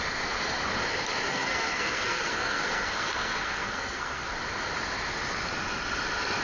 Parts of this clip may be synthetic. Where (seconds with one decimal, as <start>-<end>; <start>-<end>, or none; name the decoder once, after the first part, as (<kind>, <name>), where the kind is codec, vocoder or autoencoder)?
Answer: 1.3-4.3 (codec, SNAC)